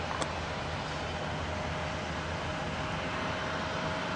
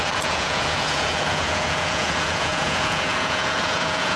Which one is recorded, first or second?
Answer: first